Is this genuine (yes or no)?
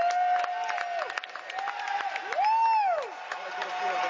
yes